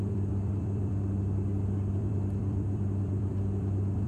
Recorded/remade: remade